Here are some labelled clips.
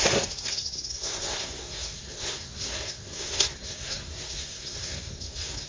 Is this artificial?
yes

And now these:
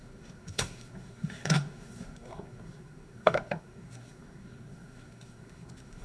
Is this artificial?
yes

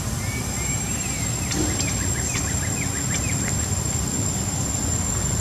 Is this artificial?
no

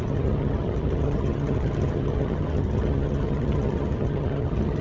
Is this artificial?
yes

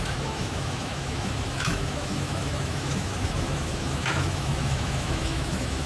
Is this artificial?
yes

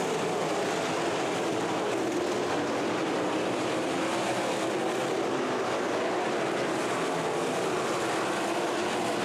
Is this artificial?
no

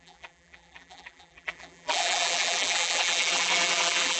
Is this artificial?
yes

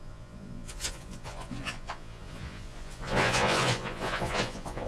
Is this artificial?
yes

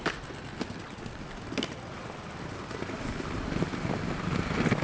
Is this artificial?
no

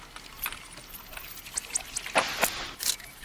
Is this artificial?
no